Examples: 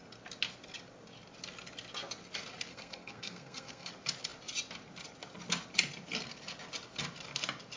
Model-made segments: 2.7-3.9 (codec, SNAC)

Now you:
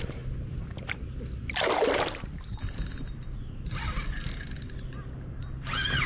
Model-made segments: none

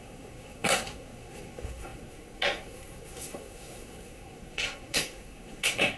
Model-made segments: 0.0-6.0 (codec, SNAC)